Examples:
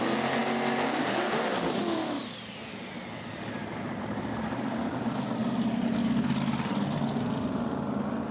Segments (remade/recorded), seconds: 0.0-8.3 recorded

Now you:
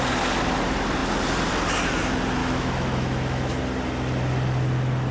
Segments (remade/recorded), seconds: 0.0-2.4 recorded; 2.4-3.6 remade; 3.6-5.1 recorded

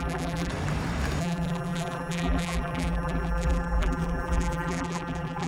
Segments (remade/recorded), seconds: 0.0-0.5 remade; 0.5-1.2 recorded; 1.2-5.5 remade

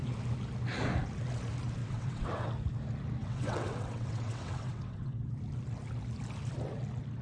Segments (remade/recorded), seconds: 0.0-1.8 recorded; 1.8-2.5 remade; 2.5-3.2 recorded; 3.2-5.3 remade; 5.3-7.2 recorded

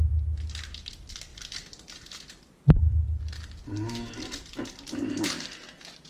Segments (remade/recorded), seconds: 0.0-6.1 recorded